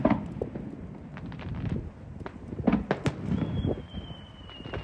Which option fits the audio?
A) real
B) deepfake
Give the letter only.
A